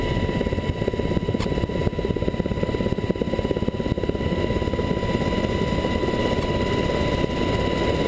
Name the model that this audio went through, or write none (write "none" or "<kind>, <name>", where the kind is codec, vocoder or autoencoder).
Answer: none